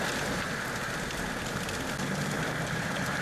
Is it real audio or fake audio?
real